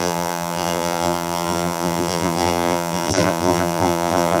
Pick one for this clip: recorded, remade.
remade